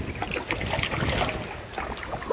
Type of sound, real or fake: real